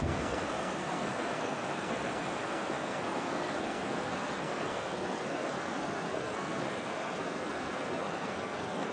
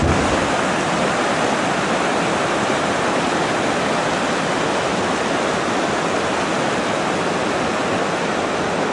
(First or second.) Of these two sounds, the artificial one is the first